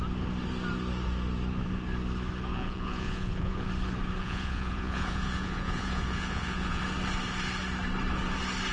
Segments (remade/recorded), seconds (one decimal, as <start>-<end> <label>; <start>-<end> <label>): 0.0-2.5 recorded; 2.5-3.7 remade; 3.7-4.2 recorded; 4.2-6.8 remade; 6.8-8.7 recorded